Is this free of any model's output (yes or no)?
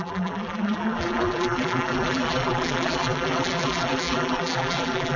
no